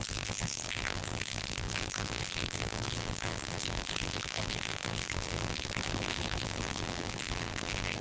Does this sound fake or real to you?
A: fake